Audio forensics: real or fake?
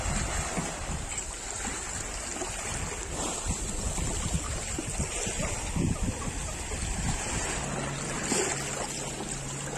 real